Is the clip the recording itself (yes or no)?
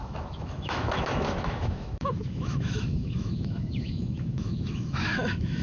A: no